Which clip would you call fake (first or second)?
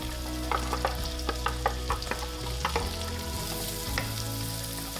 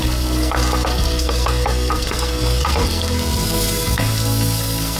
second